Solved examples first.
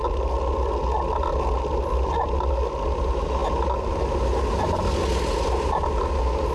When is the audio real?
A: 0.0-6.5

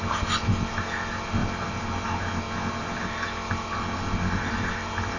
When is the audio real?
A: 0.0-5.2

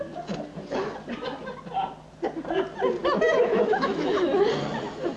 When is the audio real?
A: 0.0-3.0; 4.4-5.2